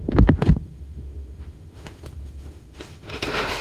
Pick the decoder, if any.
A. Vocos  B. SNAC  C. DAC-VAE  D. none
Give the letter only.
C